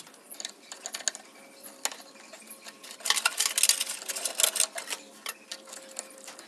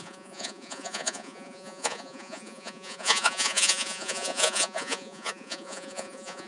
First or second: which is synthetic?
second